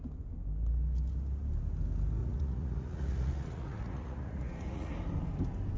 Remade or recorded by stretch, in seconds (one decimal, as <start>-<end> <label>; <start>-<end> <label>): 0.0-2.2 recorded; 2.2-4.9 remade; 4.9-5.8 recorded